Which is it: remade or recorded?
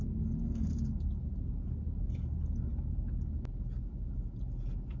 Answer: recorded